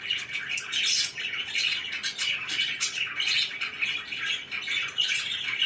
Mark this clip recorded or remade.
recorded